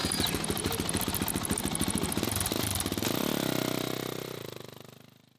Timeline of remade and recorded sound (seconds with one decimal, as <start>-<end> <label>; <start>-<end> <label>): 0.0-5.4 recorded